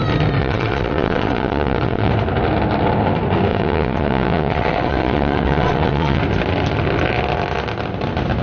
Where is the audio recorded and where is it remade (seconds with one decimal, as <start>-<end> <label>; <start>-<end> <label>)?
0.0-0.4 recorded; 0.4-2.1 remade; 2.1-3.5 recorded; 3.5-6.2 remade; 6.2-8.4 recorded